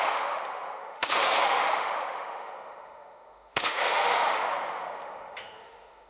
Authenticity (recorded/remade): remade